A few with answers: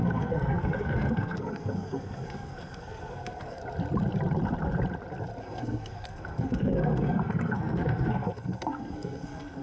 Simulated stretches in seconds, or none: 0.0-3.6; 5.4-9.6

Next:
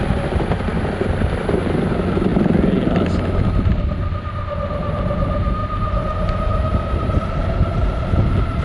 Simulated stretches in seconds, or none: none